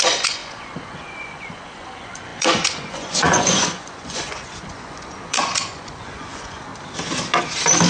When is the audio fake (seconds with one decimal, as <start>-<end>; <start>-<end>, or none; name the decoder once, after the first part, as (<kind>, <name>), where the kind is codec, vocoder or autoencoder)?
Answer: 0.0-6.7 (vocoder, Vocos)